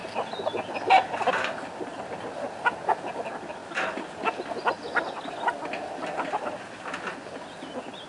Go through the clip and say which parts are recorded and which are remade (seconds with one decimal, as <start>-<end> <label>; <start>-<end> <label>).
0.0-8.1 recorded